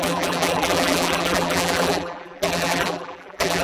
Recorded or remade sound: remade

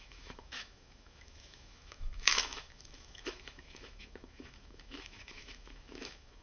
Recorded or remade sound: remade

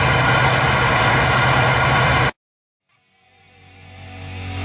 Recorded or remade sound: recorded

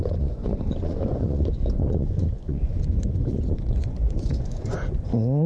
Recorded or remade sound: remade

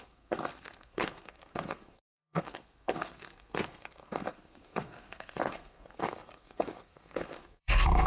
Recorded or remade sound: remade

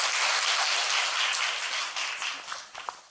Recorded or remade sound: recorded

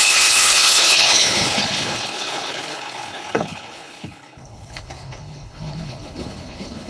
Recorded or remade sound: remade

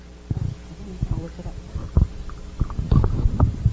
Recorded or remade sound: recorded